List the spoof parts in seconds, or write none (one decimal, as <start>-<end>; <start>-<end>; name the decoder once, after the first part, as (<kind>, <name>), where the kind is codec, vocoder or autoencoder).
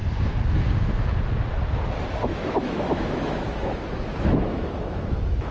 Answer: 2.1-5.5 (autoencoder, DAC-VAE)